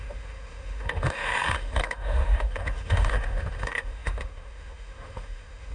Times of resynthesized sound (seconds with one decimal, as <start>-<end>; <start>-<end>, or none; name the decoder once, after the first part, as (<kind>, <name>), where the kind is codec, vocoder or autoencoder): 0.0-5.7 (autoencoder, DAC-VAE)

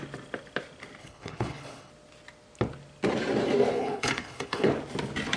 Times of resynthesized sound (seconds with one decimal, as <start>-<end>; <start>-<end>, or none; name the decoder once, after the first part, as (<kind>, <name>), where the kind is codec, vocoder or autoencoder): 1.0-1.9 (codec, HILCodec); 3.7-4.7

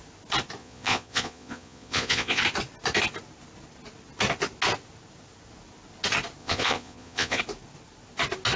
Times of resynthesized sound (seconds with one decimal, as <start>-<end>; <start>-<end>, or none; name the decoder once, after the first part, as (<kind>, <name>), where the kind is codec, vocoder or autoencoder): 0.6-2.4 (vocoder, Vocos); 6.4-7.4

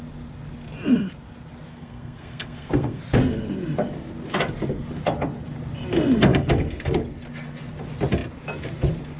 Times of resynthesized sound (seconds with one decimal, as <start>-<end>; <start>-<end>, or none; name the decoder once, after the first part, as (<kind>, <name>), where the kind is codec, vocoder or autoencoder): 1.7-3.0 (codec, SNAC)

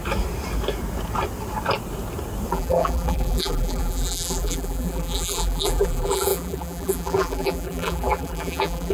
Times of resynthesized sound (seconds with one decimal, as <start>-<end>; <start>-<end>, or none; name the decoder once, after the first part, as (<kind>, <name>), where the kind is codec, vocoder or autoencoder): 2.5-8.9 (vocoder, BigVGAN v2)

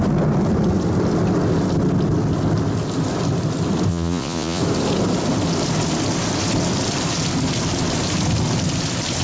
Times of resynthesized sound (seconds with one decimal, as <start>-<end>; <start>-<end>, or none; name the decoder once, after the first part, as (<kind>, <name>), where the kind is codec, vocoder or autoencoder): 3.9-4.6 (vocoder, Vocos)